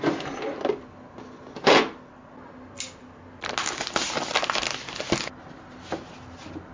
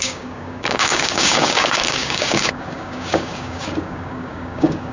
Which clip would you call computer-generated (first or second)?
second